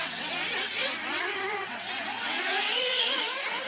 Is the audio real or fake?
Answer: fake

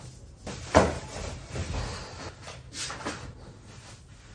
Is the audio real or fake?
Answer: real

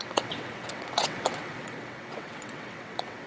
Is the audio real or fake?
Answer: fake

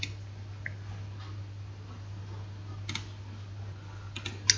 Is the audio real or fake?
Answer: real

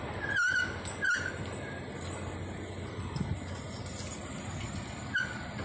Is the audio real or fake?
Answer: real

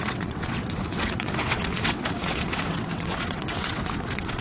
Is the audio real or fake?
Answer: fake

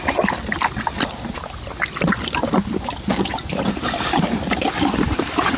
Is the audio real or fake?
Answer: real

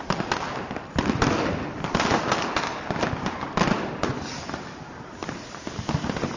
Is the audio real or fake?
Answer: real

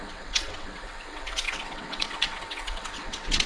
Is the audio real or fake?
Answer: fake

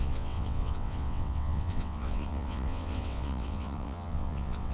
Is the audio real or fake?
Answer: fake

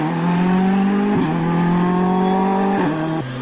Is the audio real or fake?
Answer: real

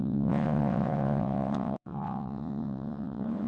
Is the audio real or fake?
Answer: fake